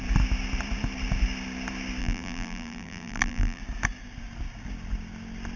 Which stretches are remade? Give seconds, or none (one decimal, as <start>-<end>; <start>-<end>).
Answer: 2.0-3.6